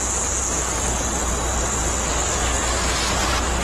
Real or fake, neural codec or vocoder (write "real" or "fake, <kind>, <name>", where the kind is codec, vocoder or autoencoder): real